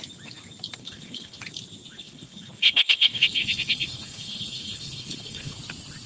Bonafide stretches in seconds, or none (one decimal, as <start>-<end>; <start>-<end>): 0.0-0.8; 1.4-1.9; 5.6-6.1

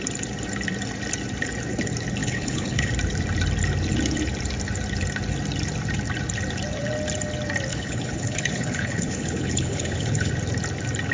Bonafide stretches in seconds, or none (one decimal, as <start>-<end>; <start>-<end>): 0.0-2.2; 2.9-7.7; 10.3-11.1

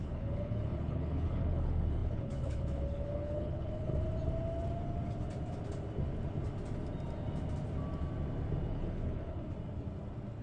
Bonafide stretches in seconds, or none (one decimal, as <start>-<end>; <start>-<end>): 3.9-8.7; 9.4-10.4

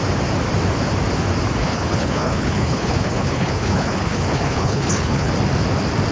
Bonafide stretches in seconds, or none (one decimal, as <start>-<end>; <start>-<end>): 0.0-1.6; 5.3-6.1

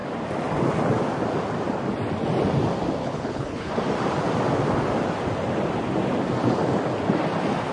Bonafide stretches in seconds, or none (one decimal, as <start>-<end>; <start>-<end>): 0.0-3.0; 3.7-7.7